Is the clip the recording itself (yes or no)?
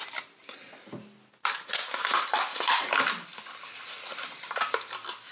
yes